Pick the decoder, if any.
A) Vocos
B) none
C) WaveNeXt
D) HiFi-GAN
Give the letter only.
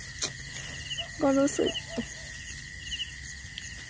B